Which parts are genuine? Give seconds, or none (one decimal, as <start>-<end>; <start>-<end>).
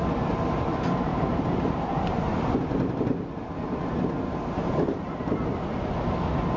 0.0-1.1; 2.4-6.6